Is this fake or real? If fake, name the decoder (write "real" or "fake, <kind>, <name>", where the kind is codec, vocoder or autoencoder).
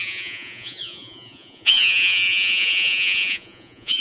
fake, vocoder, Vocos